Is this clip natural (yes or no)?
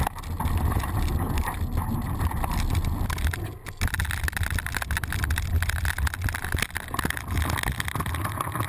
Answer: yes